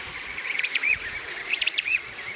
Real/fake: fake